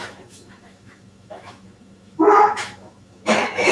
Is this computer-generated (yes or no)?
yes